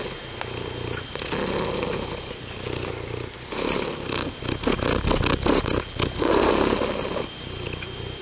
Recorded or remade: recorded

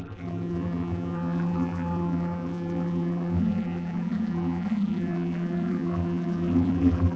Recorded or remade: remade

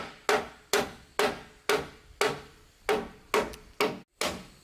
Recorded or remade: recorded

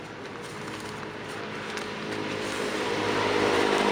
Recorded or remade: recorded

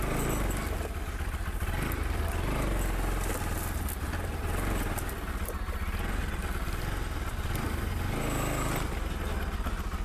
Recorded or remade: recorded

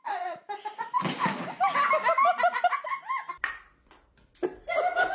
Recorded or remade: recorded